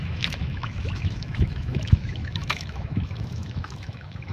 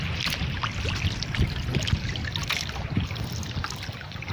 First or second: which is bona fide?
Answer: second